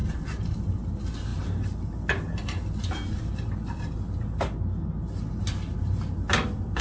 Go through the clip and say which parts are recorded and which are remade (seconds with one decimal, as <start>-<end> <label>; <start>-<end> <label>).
0.0-6.8 recorded